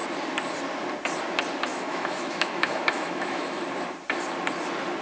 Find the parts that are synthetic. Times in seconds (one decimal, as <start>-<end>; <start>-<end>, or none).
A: 1.7-3.6